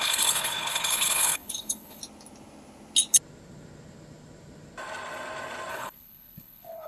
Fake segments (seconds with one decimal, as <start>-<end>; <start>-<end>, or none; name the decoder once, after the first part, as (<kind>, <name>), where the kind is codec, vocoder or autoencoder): 0.0-2.0 (codec, HILCodec); 5.7-6.9